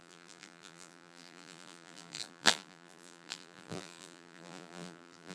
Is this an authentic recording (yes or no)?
no